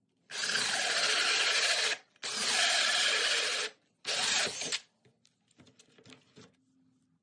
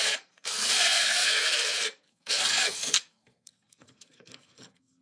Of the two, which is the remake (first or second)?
second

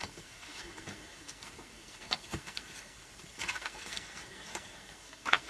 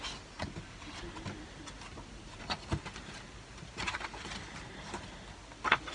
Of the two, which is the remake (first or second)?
first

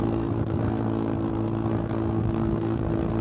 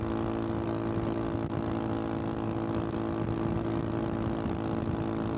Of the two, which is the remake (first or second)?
first